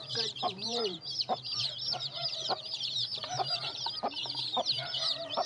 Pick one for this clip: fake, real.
fake